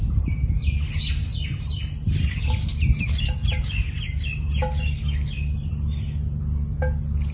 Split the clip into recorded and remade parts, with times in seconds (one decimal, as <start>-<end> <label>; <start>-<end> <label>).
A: 0.0-7.3 recorded